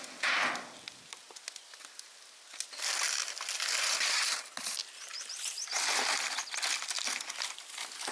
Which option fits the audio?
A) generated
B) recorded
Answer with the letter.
B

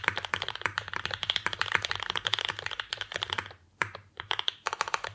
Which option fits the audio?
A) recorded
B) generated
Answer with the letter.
B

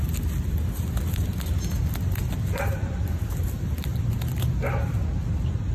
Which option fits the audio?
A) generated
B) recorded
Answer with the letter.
B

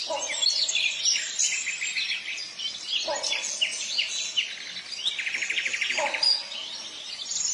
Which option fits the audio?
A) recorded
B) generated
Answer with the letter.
A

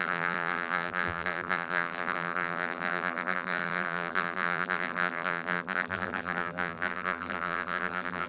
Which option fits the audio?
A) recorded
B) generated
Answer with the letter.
B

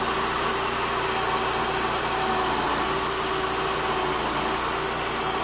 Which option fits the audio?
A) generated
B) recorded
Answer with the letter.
B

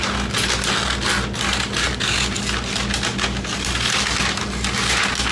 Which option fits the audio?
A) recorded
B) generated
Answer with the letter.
A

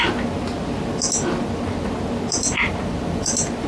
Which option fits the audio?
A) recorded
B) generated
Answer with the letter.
A